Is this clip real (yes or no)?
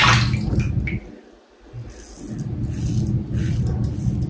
yes